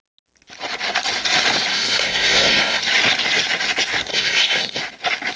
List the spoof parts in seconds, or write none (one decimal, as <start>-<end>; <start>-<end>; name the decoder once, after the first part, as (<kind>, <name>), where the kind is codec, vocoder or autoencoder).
1.7-2.8 (codec, SNAC); 4.1-4.8